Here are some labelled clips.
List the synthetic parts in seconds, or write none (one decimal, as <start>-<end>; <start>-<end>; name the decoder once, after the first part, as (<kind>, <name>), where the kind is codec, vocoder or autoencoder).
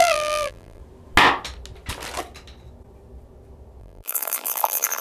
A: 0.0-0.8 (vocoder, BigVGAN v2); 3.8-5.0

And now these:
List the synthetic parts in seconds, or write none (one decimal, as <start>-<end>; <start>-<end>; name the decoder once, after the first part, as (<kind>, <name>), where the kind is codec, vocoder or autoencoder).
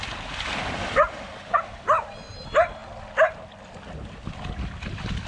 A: none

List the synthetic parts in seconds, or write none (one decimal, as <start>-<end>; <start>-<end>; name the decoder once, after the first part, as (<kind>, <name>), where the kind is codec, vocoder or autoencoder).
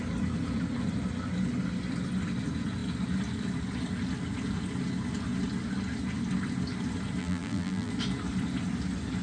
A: 7.2-7.9 (vocoder, BigVGAN v2)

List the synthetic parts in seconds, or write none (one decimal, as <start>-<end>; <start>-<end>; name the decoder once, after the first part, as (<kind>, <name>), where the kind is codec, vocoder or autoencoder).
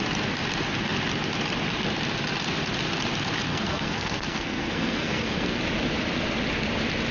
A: 3.5-5.6 (codec, SNAC)